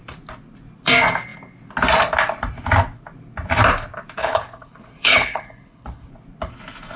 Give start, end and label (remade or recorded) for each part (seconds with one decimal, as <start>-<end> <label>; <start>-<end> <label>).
0.0-4.2 recorded; 4.2-6.1 remade; 6.1-7.0 recorded